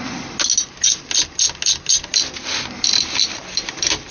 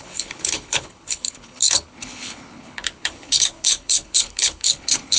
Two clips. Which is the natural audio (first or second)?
first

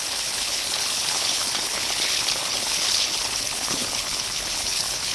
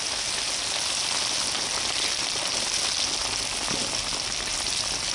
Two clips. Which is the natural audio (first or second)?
second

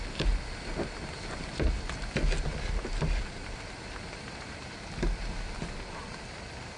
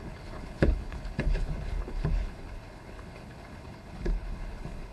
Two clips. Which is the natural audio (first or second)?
first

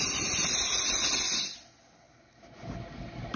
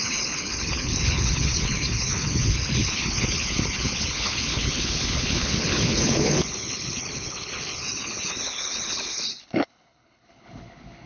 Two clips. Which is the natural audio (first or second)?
first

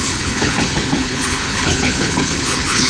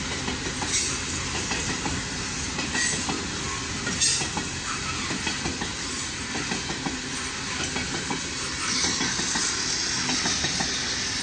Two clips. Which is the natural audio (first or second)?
second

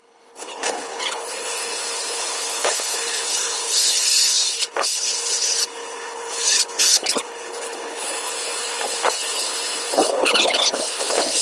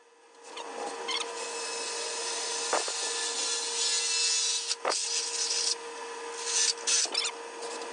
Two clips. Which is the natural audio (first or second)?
second